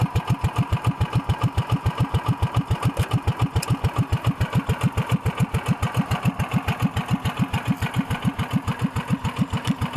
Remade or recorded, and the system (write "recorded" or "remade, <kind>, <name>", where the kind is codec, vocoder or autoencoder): recorded